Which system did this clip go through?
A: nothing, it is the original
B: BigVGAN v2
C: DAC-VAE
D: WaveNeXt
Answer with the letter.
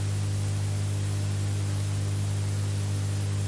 A